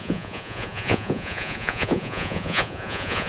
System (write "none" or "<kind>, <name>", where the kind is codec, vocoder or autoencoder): vocoder, Vocos